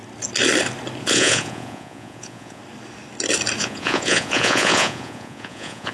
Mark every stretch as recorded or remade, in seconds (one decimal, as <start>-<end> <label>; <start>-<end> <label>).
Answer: 0.0-1.0 recorded; 1.0-2.6 remade; 2.6-3.6 recorded; 3.6-5.9 remade

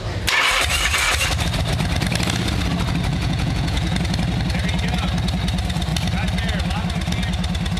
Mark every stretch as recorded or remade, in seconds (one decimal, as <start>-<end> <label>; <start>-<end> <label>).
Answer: 0.0-3.1 recorded; 3.1-4.0 remade; 4.0-7.8 recorded

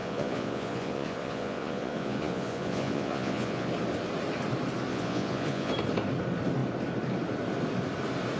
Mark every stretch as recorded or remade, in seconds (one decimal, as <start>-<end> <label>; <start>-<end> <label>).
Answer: 0.0-3.7 remade; 3.7-4.9 recorded; 4.9-5.7 remade; 5.7-8.4 recorded